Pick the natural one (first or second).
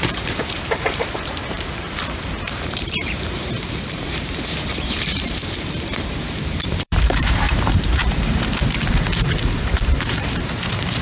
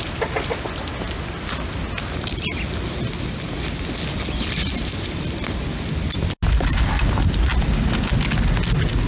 second